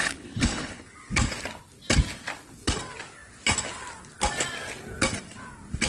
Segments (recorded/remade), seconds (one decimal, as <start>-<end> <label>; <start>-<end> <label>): 0.0-0.8 remade; 0.8-5.9 recorded